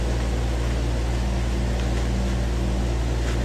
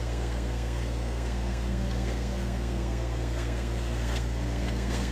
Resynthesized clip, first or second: second